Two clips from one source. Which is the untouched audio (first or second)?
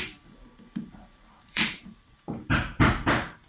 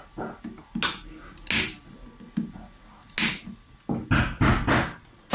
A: second